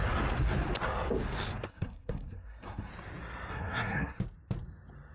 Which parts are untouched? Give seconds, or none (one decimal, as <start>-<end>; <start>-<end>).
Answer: 0.0-1.7; 2.9-3.5; 4.2-5.1